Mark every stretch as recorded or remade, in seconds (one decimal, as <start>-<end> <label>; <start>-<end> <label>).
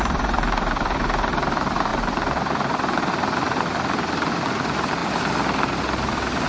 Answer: 0.0-6.5 recorded